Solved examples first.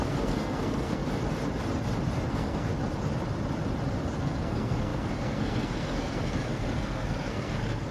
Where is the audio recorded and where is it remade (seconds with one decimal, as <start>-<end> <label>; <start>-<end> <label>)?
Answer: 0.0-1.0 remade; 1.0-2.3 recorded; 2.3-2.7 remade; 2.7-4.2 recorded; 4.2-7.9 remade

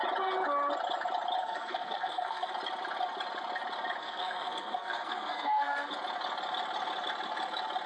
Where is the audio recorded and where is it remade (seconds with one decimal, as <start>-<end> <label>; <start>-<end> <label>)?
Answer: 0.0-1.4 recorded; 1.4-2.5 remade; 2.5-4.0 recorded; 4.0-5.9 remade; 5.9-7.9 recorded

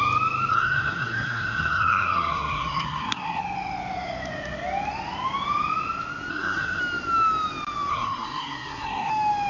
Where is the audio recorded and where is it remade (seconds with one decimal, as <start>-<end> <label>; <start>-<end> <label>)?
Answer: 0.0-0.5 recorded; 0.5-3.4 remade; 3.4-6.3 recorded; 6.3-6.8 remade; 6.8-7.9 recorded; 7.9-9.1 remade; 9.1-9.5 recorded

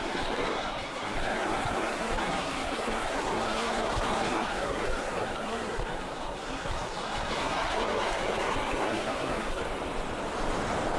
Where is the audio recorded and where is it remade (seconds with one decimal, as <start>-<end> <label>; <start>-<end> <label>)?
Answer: 0.0-9.6 remade; 9.6-11.0 recorded